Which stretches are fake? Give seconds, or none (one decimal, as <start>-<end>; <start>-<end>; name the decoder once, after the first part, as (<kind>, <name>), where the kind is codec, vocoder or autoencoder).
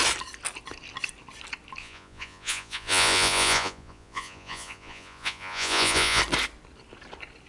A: 1.8-6.2 (vocoder, Vocos)